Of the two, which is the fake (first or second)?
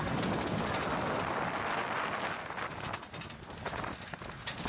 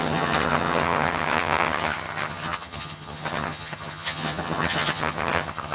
second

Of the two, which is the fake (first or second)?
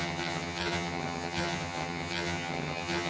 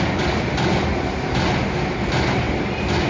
first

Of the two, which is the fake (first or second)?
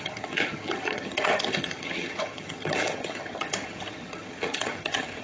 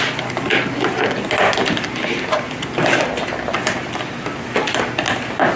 first